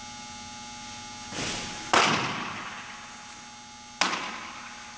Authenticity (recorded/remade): recorded